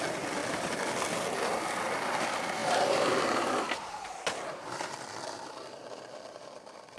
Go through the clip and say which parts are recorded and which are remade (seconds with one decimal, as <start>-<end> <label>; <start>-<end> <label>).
0.0-0.4 recorded; 0.4-1.0 remade; 1.0-2.6 recorded; 2.6-7.0 remade